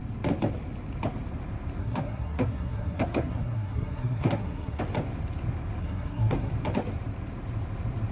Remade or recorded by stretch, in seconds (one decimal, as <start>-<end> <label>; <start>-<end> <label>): 0.0-1.8 recorded; 1.8-4.8 remade; 4.8-5.8 recorded; 5.8-6.5 remade; 6.5-8.1 recorded